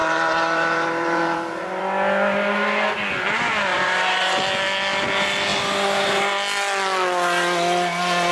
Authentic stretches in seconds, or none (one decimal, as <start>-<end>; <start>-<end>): 1.8-3.7; 4.4-8.3